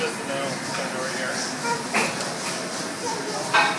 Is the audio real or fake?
real